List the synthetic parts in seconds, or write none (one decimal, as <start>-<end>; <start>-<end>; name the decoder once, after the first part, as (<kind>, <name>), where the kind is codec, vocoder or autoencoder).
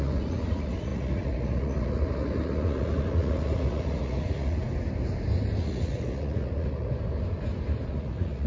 0.0-4.6 (vocoder, Vocos); 5.6-6.9; 7.9-8.5